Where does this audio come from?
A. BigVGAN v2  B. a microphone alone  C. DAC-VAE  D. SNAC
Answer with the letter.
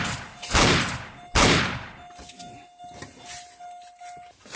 B